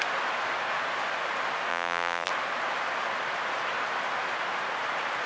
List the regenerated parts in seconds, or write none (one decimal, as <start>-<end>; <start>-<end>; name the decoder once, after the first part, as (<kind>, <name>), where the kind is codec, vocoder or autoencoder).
1.7-2.3 (vocoder, BigVGAN v2)